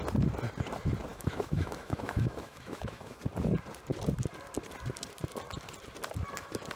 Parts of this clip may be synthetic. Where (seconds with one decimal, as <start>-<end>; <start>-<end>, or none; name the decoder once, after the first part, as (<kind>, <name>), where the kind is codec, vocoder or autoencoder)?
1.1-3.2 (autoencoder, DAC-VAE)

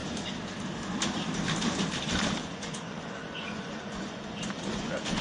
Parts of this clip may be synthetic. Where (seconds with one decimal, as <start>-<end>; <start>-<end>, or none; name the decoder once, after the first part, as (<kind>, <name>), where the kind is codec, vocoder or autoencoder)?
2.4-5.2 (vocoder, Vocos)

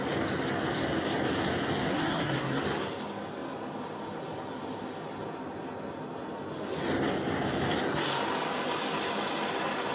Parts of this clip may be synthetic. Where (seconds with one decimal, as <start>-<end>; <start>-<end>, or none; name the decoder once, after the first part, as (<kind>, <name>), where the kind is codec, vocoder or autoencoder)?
1.9-2.6 (codec, SNAC)

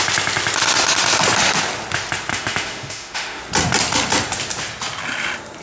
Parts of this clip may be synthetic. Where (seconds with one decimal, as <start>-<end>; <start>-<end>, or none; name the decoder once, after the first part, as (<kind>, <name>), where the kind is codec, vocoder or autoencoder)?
2.3-3.4 (autoencoder, DAC-VAE)